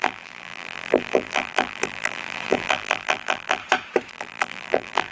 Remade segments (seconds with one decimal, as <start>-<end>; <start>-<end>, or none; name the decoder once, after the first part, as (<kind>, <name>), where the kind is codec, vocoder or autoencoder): 0.0-3.6 (vocoder, BigVGAN v2); 4.1-5.1